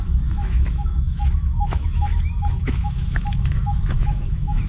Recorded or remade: remade